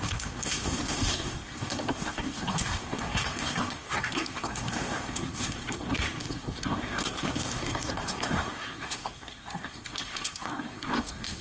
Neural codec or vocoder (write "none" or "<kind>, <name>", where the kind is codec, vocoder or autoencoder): codec, SNAC